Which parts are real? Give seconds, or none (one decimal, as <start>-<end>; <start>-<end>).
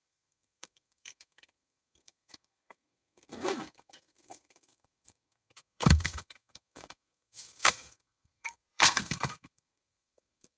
none